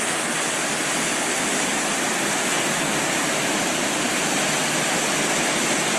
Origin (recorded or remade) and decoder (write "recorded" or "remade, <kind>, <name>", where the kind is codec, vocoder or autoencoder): recorded